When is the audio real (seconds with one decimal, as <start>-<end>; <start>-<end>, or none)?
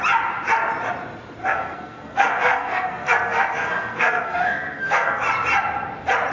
0.0-1.4; 5.2-6.3